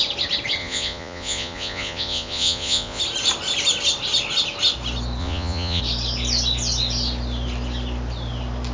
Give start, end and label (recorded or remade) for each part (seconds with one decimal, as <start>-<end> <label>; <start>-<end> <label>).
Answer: 0.0-0.6 recorded; 0.6-3.0 remade; 3.0-5.2 recorded; 5.2-5.8 remade; 5.8-8.7 recorded